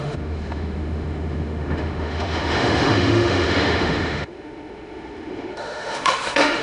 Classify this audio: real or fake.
fake